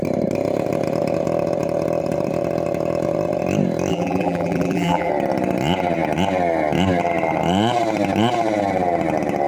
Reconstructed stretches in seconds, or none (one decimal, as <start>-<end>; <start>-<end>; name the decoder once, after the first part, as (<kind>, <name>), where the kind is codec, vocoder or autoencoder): 3.9-5.1 (vocoder, BigVGAN v2)